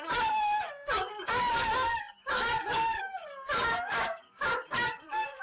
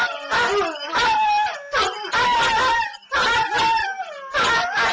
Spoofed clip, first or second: first